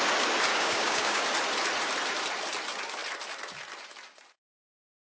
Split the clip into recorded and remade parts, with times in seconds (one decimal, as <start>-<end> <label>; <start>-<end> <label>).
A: 0.0-0.5 recorded; 0.5-1.2 remade; 1.2-5.1 recorded